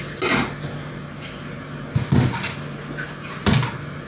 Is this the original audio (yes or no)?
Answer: yes